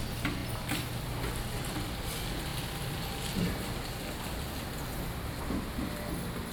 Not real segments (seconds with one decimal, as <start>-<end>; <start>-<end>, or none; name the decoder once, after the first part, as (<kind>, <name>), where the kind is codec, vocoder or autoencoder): none